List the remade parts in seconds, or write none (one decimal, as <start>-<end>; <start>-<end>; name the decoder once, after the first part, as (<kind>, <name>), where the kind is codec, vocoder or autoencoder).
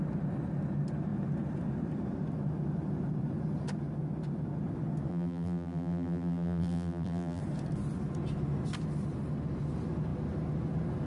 5.1-7.4 (vocoder, BigVGAN v2)